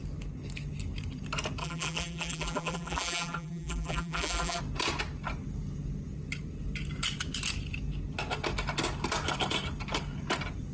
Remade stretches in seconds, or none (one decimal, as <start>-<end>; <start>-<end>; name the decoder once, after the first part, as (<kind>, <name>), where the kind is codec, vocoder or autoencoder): 1.6-4.6 (vocoder, BigVGAN v2)

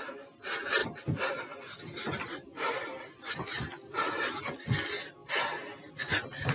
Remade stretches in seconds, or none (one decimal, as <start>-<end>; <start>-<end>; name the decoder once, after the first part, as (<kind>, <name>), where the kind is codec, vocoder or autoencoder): 0.8-1.4 (vocoder, BigVGAN v2); 2.5-4.4

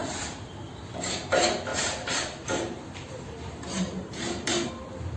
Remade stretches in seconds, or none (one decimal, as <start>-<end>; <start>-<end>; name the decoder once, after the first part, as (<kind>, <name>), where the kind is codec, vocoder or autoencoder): 0.0-0.7 (vocoder, BigVGAN v2); 1.7-4.7

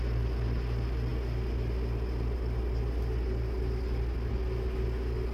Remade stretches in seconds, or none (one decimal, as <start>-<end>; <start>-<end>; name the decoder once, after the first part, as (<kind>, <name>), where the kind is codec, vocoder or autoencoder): none

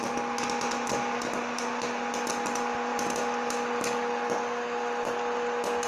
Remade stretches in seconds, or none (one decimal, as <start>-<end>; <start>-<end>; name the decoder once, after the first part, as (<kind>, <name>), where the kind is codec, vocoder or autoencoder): none

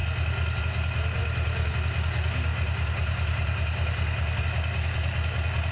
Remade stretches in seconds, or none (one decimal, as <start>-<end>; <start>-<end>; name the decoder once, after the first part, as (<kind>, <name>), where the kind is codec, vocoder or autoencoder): 1.2-1.7 (vocoder, BigVGAN v2); 2.5-4.4